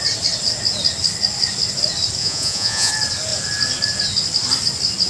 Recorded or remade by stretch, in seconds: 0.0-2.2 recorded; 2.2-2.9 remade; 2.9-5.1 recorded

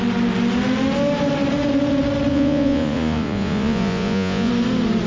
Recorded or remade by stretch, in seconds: 0.0-2.3 recorded; 2.3-4.5 remade; 4.5-5.1 recorded

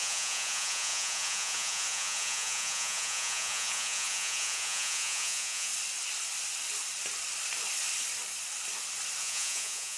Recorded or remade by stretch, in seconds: 0.0-5.7 remade; 5.7-9.2 recorded; 9.2-10.0 remade

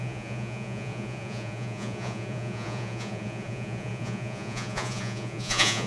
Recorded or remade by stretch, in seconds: 0.0-5.9 remade

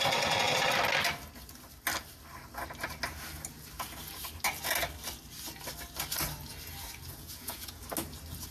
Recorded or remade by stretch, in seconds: 0.0-7.1 recorded; 7.1-7.8 remade; 7.8-8.5 recorded

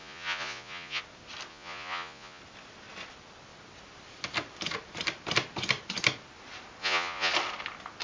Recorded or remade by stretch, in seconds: 0.0-1.0 remade; 1.0-1.5 recorded; 1.5-2.4 remade; 2.4-6.8 recorded; 6.8-7.3 remade; 7.3-8.0 recorded

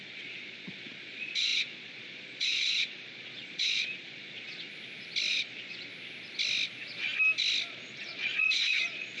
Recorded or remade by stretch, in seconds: 0.0-4.7 remade; 4.7-5.3 recorded; 5.3-5.9 remade; 5.9-7.7 recorded; 7.7-9.2 remade